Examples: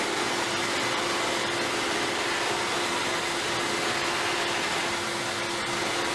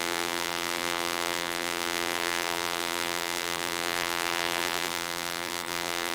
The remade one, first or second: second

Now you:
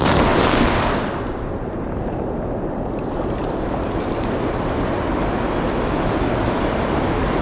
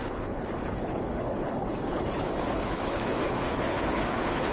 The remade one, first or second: second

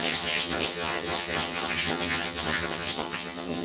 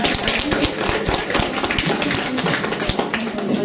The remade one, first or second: first